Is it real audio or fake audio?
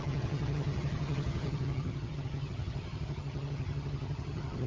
fake